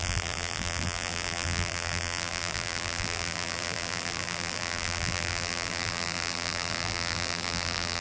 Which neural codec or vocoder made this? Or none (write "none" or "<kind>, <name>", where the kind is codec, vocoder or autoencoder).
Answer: vocoder, BigVGAN v2